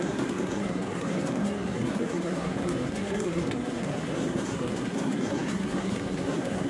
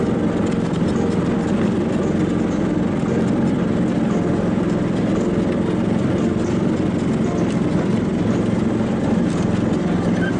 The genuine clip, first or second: second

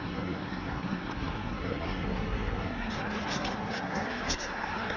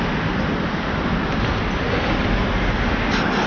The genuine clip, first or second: second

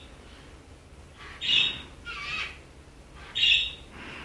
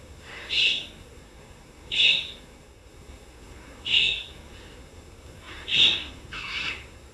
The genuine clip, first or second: first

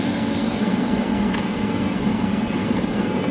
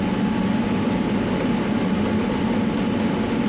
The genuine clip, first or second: second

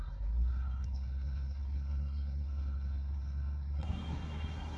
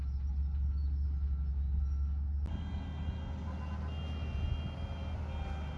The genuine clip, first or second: second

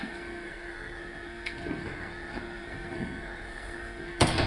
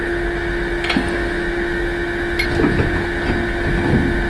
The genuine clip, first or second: second